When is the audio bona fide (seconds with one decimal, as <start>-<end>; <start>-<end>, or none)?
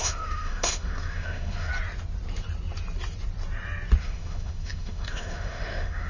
1.7-4.0